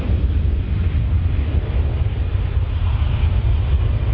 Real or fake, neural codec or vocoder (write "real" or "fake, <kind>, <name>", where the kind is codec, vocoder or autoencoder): real